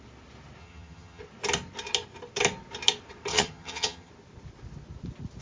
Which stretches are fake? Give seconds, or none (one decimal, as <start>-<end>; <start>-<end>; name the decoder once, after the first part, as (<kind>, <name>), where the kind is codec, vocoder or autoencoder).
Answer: 0.6-1.2 (vocoder, HiFi-GAN); 3.3-4.1